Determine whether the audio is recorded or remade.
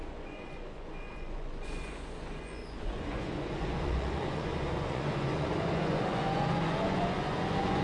remade